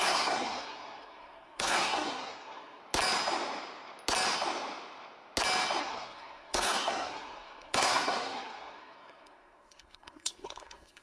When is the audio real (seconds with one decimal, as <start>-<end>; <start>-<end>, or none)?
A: 2.8-5.8